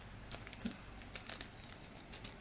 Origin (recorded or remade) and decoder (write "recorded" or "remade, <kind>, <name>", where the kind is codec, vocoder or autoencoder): recorded